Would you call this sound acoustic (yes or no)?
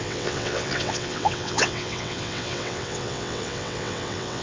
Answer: no